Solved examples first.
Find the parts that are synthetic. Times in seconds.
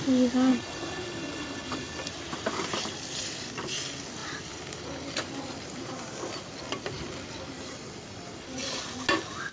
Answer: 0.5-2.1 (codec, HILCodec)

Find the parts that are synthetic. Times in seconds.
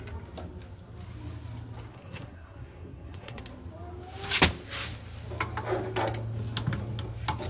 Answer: 1.9-3.4 (codec, SNAC)